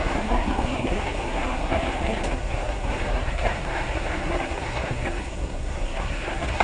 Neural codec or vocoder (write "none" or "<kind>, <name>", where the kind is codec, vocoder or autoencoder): codec, SNAC